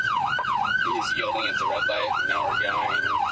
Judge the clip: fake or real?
fake